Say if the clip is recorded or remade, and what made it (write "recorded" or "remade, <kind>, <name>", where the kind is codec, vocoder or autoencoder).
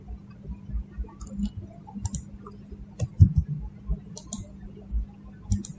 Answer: recorded